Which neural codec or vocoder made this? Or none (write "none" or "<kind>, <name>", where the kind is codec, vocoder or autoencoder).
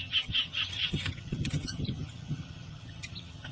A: vocoder, HiFi-GAN